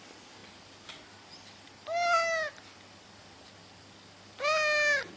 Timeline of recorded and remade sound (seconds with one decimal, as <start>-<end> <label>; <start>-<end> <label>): 0.0-5.2 recorded